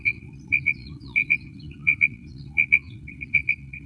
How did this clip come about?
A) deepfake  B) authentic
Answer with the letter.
A